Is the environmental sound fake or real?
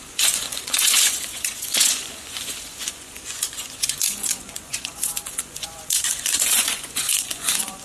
fake